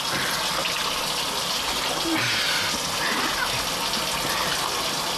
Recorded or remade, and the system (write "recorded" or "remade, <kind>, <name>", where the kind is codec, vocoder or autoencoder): recorded